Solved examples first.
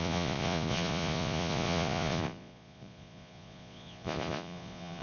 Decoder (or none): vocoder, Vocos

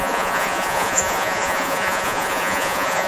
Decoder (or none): vocoder, Vocos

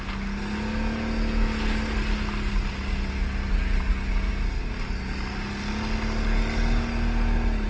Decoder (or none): none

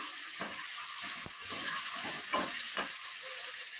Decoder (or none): vocoder, Vocos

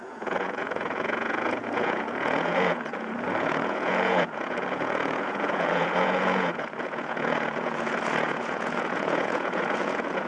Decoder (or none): vocoder, Vocos